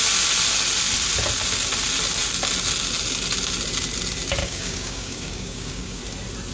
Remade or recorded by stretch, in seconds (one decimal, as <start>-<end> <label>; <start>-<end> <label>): 0.0-4.4 recorded; 4.4-6.0 remade; 6.0-6.5 recorded

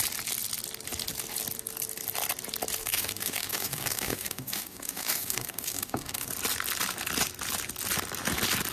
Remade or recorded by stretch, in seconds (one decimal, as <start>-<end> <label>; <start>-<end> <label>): 0.0-2.8 recorded; 2.8-6.3 remade; 6.3-8.7 recorded

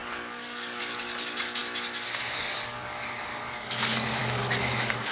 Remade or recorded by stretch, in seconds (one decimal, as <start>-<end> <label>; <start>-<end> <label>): 0.0-1.6 remade; 1.6-2.2 recorded; 2.2-5.1 remade